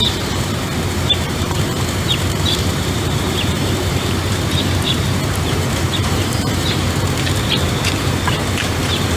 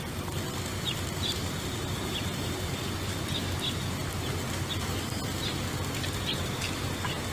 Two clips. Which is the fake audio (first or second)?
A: first